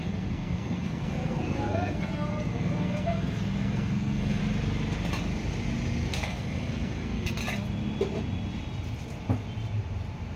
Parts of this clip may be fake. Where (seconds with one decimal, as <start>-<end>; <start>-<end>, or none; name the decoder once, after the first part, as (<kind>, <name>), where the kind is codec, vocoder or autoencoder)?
0.0-4.4 (codec, SNAC); 6.1-7.4